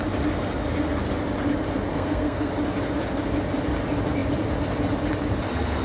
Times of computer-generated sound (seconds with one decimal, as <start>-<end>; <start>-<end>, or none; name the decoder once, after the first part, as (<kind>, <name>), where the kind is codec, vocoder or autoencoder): 1.9-2.5 (codec, SNAC)